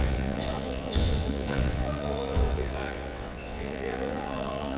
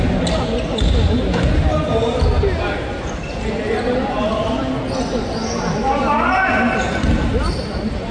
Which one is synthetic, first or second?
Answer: first